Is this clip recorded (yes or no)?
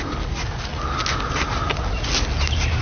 yes